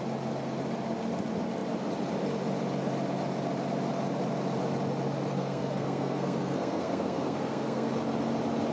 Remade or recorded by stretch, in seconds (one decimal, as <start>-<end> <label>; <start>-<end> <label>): 0.0-5.3 recorded; 5.3-7.9 remade; 7.9-8.7 recorded